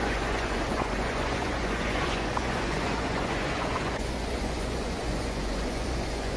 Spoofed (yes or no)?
yes